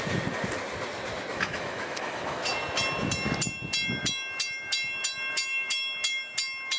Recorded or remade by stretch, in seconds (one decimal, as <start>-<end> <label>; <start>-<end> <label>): 0.0-1.3 recorded; 1.3-2.5 remade; 2.5-6.8 recorded

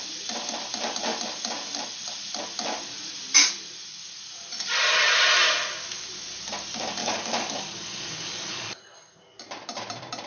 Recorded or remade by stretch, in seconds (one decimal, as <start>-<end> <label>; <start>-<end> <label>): 0.0-7.0 recorded; 7.0-8.8 remade; 8.8-10.3 recorded

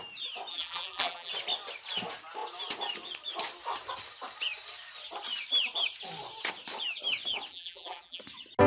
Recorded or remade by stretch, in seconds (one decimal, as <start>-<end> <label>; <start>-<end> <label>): 0.0-0.5 recorded; 0.5-1.3 remade; 1.3-7.5 recorded; 7.5-8.2 remade; 8.2-8.7 recorded

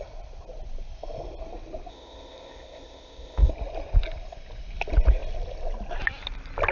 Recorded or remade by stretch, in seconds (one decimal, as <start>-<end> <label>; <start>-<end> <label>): 0.0-1.9 recorded; 1.9-3.5 remade; 3.5-6.7 recorded

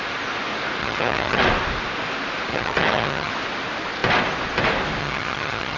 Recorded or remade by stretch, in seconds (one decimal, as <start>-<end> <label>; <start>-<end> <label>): 0.0-0.8 recorded; 0.8-1.4 remade; 1.4-2.5 recorded; 2.5-3.3 remade; 3.3-5.0 recorded; 5.0-5.8 remade

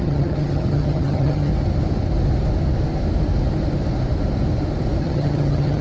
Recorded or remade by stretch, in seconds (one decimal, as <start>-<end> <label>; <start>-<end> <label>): 0.0-1.5 remade; 1.5-5.0 recorded; 5.0-5.8 remade